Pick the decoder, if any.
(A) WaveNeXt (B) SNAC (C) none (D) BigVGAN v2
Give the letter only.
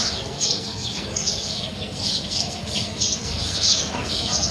B